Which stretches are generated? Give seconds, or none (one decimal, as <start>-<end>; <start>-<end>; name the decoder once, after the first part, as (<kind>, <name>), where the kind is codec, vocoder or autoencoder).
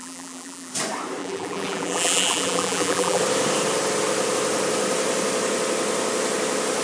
0.0-0.7 (vocoder, BigVGAN v2); 1.2-3.2